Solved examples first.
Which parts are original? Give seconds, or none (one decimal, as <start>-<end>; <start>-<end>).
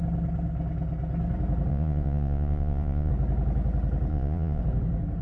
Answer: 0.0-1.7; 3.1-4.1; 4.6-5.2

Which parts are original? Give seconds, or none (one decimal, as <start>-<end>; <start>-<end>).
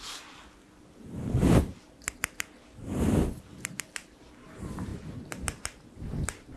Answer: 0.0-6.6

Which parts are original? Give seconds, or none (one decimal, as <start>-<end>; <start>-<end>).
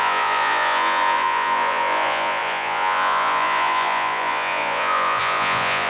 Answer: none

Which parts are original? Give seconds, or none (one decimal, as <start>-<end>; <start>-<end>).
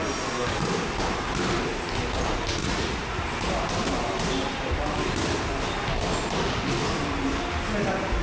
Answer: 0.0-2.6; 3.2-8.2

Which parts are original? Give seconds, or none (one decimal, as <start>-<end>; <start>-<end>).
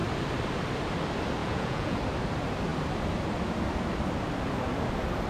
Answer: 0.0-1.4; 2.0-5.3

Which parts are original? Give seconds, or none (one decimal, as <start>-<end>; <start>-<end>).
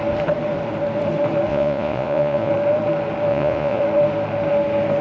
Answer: 0.0-1.5; 2.5-3.3; 3.8-5.0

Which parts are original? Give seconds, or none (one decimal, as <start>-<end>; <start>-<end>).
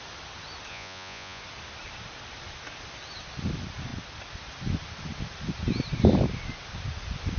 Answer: 0.0-0.7; 1.4-7.4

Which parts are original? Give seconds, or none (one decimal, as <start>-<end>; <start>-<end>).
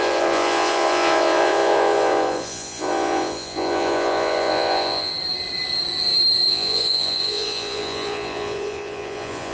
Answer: 5.1-6.5